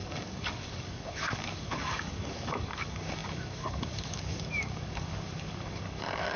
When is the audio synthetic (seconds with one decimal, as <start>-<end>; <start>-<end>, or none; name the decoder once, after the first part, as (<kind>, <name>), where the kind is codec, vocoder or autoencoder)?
0.0-6.4 (codec, DAC)